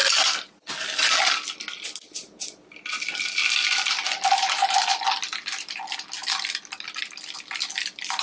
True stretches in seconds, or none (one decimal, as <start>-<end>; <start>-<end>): 0.0-8.2